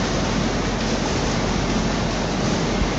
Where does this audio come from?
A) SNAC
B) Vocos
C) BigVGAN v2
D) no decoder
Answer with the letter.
D